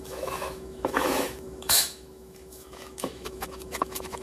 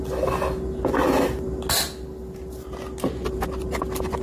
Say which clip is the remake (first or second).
first